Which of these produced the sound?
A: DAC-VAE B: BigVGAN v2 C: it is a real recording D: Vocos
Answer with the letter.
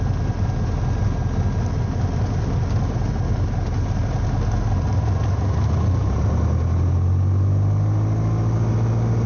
C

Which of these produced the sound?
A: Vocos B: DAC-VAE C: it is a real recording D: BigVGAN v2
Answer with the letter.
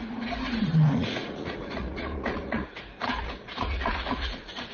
A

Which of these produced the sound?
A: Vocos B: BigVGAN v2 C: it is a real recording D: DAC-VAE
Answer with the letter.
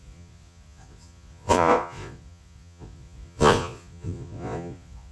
A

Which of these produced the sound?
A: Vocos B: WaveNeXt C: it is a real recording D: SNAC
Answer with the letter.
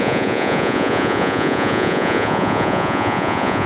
A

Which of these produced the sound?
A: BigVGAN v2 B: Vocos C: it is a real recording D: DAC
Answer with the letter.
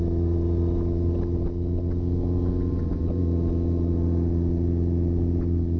C